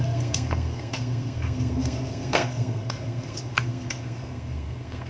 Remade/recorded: remade